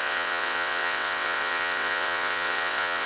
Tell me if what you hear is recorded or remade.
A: remade